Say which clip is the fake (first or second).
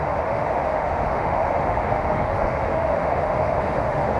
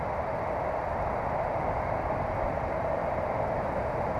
first